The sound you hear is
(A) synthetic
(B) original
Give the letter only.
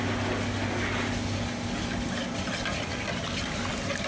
B